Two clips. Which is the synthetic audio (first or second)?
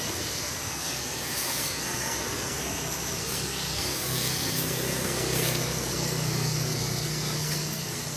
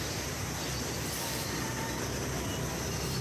first